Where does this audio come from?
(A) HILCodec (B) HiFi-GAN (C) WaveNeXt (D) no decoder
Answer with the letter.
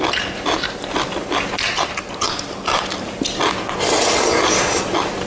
D